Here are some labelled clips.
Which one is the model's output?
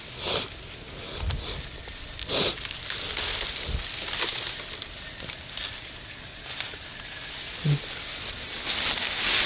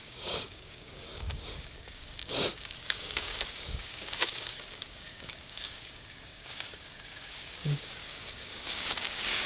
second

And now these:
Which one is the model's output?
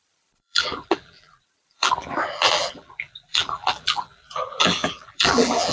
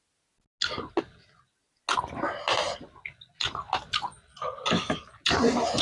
first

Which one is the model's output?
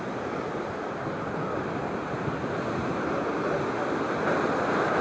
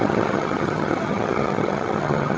second